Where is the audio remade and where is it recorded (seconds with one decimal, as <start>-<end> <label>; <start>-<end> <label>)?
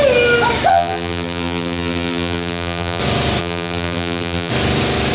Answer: 0.0-0.7 recorded; 0.7-3.0 remade; 3.0-3.4 recorded; 3.4-4.5 remade; 4.5-5.1 recorded